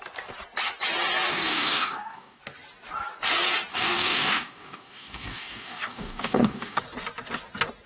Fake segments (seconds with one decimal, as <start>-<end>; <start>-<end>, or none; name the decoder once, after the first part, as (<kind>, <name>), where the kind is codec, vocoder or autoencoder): 1.3-2.4 (codec, DAC); 3.7-6.8